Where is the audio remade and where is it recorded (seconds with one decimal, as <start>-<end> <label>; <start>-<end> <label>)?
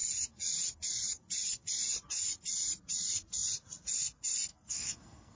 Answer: 0.0-4.5 recorded; 4.5-5.4 remade